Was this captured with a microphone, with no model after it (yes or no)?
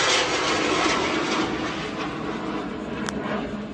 yes